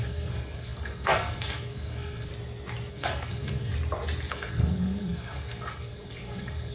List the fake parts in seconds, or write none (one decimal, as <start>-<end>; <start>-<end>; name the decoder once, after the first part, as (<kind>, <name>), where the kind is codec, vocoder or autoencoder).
0.0-2.3 (codec, SNAC); 2.9-3.7; 4.3-6.7